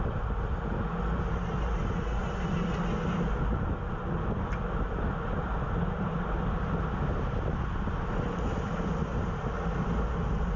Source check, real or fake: real